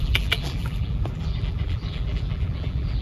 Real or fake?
fake